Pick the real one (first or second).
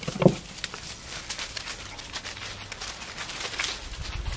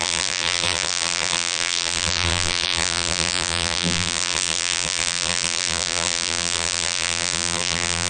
first